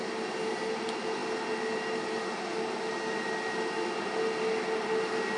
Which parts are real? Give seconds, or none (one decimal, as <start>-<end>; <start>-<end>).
0.0-5.4